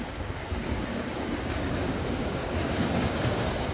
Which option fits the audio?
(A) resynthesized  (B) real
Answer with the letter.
A